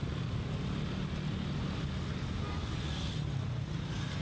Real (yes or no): yes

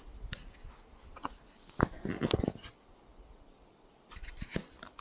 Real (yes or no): yes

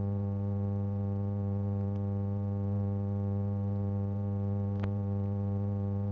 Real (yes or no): no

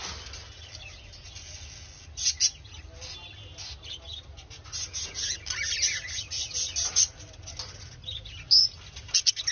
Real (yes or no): yes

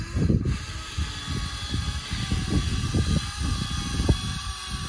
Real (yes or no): yes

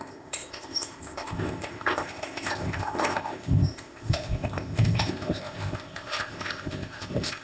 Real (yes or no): no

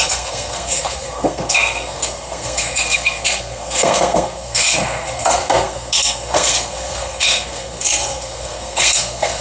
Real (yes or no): no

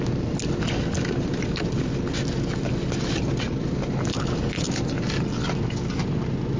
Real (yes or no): yes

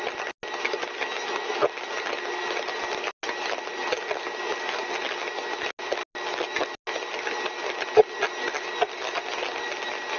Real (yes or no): yes